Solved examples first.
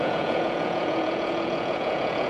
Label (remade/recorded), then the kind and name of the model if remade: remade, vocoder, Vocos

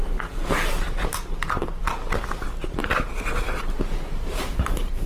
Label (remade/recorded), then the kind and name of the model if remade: recorded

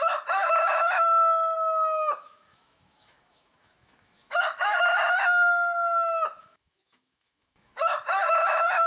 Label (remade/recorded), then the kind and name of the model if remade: remade, autoencoder, DAC-VAE